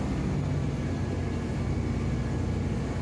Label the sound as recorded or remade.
recorded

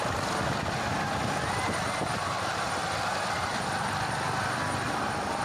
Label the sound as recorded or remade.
recorded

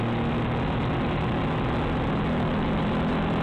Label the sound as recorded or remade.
recorded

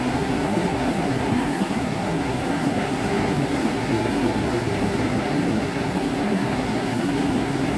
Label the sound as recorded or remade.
remade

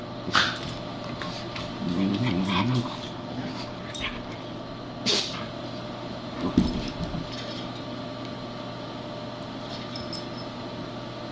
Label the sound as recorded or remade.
recorded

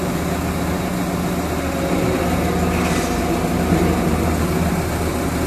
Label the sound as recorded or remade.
recorded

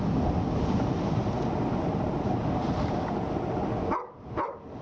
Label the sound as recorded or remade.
recorded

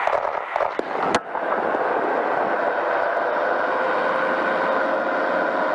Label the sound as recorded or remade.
recorded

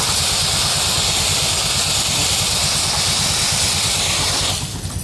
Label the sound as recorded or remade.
recorded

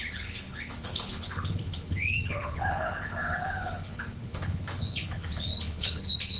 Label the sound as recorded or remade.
remade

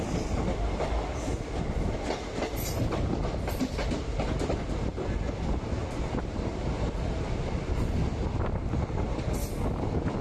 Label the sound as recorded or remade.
recorded